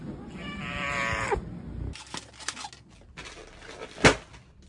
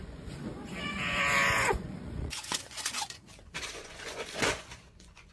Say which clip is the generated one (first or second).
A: second